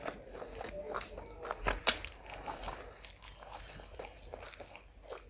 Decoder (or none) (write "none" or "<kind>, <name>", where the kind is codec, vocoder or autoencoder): none